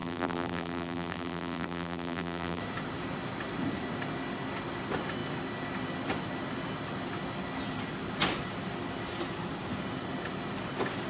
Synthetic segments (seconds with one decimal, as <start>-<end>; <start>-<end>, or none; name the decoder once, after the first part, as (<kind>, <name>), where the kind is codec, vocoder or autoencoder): 0.0-2.6 (vocoder, BigVGAN v2)